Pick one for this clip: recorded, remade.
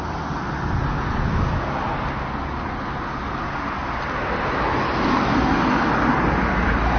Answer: recorded